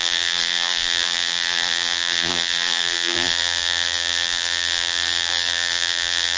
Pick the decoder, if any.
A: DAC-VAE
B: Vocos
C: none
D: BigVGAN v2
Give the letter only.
D